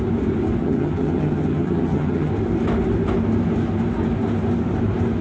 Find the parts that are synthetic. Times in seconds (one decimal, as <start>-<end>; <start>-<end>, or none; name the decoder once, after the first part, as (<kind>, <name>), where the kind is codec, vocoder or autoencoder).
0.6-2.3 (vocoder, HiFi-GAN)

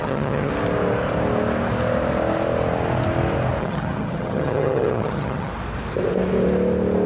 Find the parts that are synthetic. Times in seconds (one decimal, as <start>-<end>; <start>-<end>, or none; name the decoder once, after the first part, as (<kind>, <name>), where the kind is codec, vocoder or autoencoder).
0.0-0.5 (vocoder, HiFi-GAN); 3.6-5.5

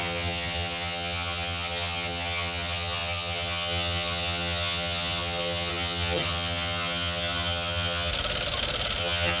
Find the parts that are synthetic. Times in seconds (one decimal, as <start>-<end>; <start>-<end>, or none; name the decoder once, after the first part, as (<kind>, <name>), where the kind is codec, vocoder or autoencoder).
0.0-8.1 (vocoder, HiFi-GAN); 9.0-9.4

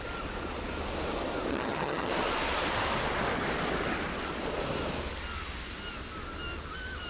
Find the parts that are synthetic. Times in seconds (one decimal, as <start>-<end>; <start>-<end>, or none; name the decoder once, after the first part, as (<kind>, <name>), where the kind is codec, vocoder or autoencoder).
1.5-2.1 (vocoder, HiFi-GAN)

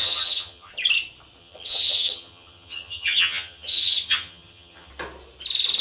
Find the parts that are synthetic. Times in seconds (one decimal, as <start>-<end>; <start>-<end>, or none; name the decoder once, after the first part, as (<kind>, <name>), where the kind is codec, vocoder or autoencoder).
0.0-0.7 (vocoder, HiFi-GAN); 1.4-4.9

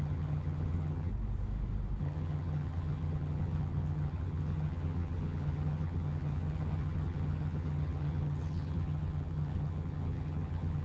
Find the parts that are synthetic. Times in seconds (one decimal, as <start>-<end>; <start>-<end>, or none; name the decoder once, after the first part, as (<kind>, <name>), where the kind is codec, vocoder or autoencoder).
0.0-1.1 (vocoder, HiFi-GAN); 2.0-10.8